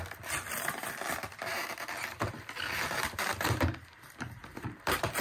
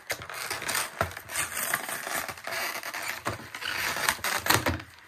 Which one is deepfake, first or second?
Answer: first